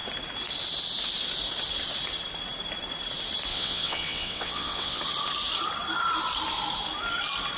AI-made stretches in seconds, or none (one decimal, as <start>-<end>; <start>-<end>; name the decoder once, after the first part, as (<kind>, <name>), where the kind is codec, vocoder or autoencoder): 3.5-5.0 (vocoder, WaveNeXt)